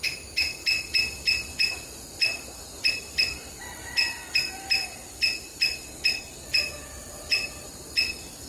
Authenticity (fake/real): real